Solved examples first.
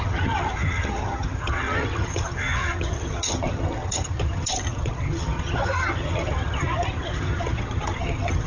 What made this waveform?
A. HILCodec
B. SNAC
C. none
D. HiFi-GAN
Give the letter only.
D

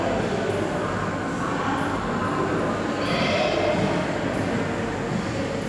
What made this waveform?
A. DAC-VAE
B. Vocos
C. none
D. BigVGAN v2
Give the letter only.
C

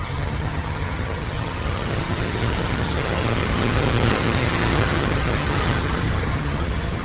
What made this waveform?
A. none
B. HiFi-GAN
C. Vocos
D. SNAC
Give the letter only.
B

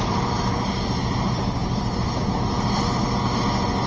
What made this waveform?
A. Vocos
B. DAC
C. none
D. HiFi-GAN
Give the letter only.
C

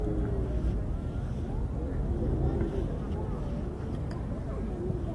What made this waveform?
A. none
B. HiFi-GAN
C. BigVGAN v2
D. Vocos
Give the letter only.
A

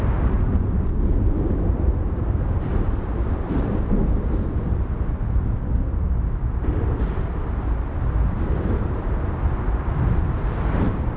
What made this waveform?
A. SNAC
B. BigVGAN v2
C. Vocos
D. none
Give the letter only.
B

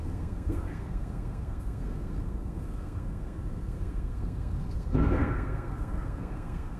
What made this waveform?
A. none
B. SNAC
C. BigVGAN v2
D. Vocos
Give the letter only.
B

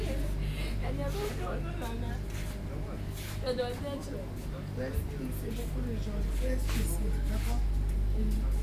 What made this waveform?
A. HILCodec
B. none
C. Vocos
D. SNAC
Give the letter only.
B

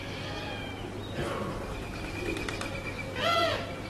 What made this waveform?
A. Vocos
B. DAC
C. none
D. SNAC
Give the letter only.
C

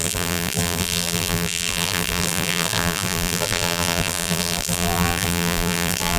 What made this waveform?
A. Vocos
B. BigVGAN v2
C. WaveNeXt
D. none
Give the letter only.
B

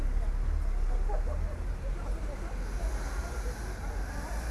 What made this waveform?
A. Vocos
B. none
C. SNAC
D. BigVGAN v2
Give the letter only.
B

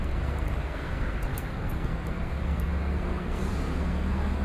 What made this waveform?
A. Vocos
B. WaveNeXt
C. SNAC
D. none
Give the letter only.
C